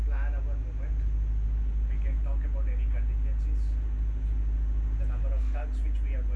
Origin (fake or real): real